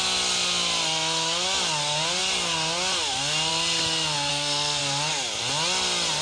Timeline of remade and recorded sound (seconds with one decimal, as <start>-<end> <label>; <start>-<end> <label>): 0.0-4.3 recorded; 4.3-4.8 remade; 4.8-6.2 recorded